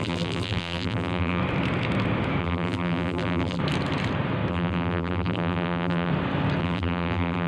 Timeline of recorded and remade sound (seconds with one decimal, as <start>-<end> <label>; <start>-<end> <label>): 0.0-1.4 remade; 1.4-2.4 recorded; 2.4-3.6 remade; 3.6-4.5 recorded; 4.5-6.1 remade; 6.1-6.6 recorded; 6.6-7.5 remade